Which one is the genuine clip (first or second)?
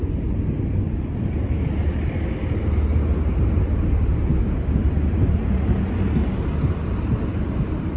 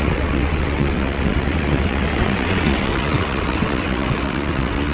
first